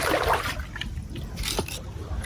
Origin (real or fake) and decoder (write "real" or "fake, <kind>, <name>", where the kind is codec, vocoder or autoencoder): real